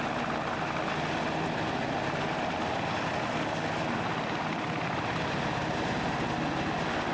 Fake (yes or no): no